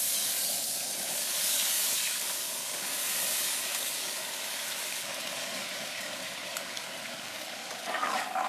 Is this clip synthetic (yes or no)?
yes